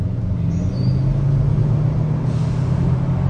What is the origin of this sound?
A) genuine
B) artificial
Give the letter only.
A